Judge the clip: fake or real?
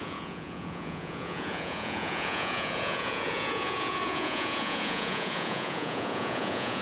fake